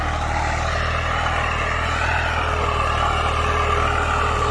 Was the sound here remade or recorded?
recorded